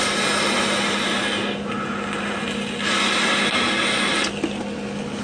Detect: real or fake real